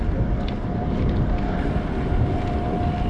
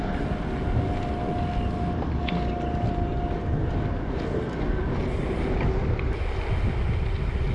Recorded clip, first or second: second